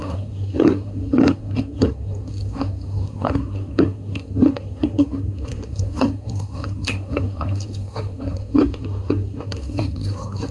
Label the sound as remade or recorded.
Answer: remade